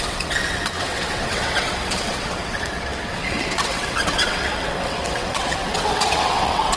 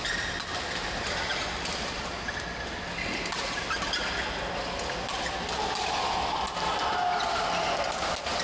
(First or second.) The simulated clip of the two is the first